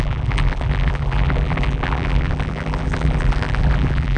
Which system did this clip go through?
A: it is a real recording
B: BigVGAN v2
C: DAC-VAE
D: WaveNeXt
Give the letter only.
B